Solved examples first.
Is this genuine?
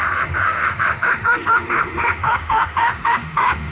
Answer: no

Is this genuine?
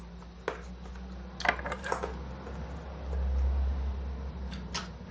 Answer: yes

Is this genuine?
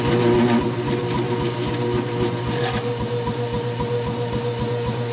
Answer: yes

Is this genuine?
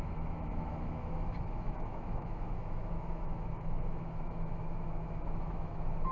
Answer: no